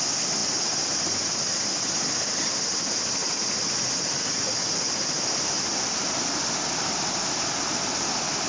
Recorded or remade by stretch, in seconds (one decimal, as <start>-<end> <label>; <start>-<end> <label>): 0.0-8.5 recorded